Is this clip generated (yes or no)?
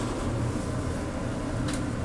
no